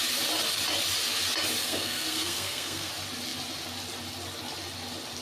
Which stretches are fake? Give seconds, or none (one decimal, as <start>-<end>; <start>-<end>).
1.6-2.9